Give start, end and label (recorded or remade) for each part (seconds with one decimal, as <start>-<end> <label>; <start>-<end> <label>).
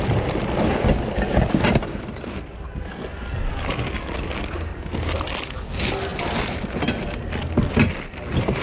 0.0-8.6 recorded